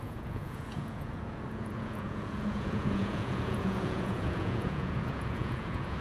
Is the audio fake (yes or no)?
yes